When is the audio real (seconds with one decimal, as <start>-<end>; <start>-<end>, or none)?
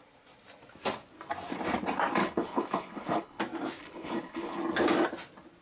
0.0-2.2; 3.4-3.8; 4.6-5.6